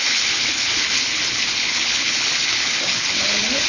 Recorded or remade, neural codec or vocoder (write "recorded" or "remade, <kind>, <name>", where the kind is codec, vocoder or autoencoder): remade, codec, HILCodec